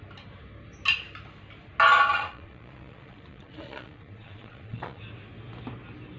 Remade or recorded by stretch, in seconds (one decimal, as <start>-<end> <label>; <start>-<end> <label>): 0.0-2.1 recorded; 2.1-5.0 remade; 5.0-6.2 recorded